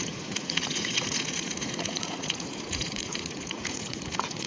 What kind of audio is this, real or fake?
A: fake